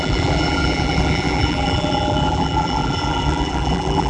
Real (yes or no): no